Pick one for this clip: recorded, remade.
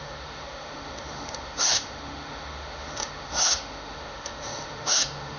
remade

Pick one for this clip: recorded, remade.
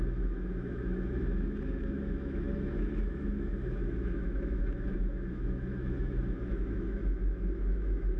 remade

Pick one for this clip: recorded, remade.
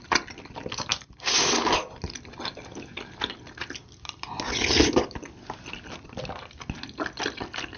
recorded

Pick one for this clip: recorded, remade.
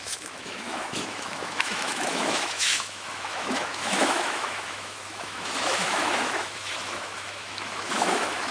remade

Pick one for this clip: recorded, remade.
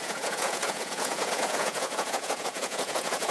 remade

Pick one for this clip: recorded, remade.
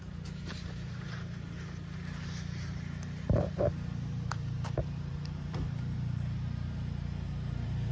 remade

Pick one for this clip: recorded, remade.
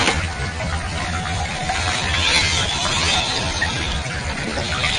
recorded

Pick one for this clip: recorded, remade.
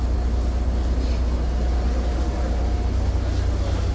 recorded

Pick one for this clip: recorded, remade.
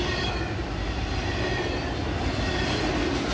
recorded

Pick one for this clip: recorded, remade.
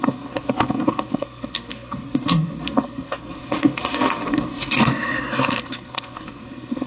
remade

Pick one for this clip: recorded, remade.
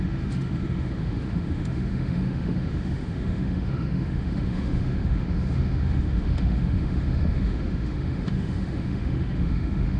remade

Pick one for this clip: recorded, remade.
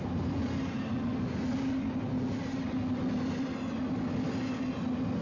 recorded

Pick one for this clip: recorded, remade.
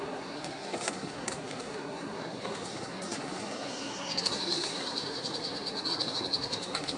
remade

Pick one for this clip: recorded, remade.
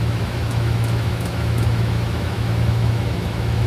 remade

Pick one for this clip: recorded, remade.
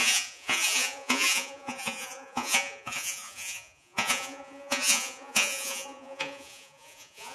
remade